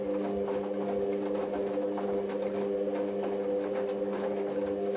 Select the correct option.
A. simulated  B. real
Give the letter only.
B